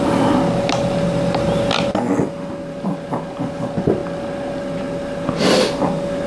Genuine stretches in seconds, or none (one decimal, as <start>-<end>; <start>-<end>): 0.0-6.3